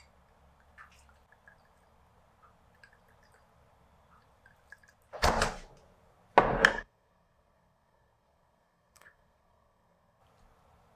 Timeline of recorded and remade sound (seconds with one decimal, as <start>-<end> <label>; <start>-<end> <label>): 0.0-6.7 recorded; 6.7-10.2 remade; 10.2-11.0 recorded